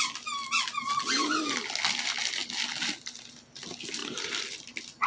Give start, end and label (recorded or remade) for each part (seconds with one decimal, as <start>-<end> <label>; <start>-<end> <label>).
0.0-2.4 recorded; 2.4-3.3 remade; 3.3-4.0 recorded; 4.0-5.1 remade